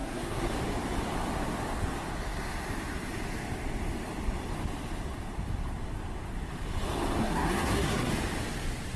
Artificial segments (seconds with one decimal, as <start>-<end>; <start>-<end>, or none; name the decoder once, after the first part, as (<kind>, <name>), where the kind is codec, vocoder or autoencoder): 0.0-0.5 (codec, SNAC); 7.2-8.1